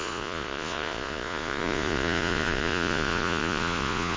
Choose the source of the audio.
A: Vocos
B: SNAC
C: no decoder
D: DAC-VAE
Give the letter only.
A